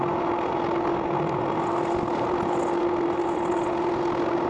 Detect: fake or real real